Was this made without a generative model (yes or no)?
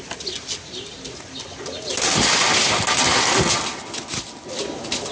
yes